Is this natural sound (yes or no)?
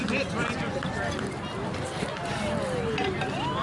yes